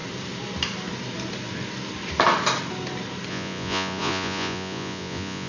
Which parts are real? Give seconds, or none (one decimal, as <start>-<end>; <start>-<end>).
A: 0.0-3.3